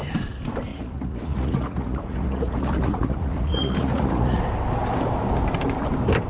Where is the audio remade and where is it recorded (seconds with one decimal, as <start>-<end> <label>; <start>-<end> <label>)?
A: 0.0-0.7 recorded; 0.7-4.4 remade; 4.4-6.3 recorded